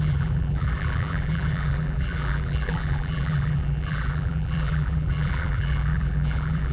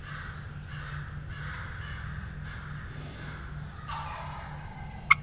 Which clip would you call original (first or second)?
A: second